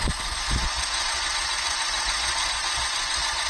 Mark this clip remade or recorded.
remade